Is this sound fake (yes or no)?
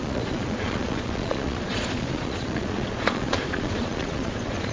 yes